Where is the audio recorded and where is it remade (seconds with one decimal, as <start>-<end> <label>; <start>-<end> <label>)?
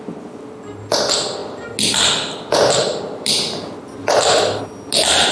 0.0-5.3 recorded